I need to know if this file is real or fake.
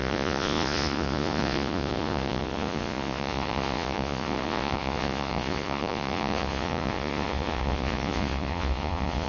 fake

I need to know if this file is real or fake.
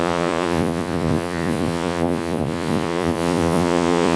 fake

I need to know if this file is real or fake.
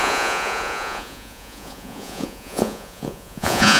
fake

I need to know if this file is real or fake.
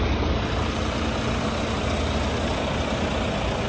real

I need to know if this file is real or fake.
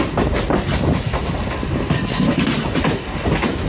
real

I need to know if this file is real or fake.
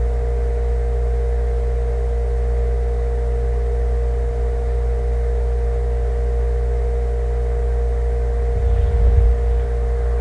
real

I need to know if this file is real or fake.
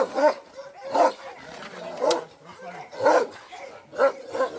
real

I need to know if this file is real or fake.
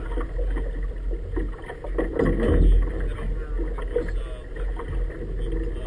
real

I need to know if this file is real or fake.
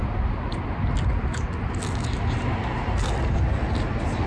real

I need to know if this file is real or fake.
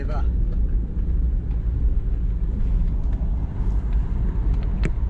real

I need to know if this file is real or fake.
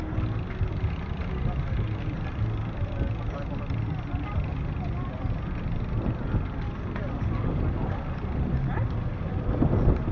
real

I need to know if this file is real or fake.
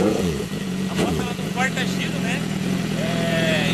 fake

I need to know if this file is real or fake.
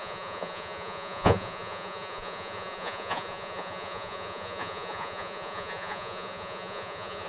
fake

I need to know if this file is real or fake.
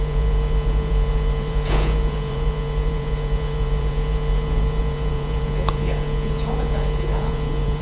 fake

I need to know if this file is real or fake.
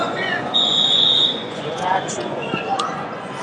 fake